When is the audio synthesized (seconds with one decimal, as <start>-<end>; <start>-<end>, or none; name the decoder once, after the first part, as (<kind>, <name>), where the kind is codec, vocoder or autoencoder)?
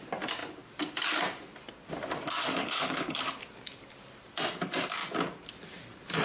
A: 2.6-3.2 (codec, HILCodec)